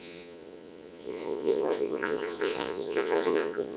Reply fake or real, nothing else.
fake